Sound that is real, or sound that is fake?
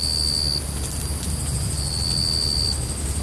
real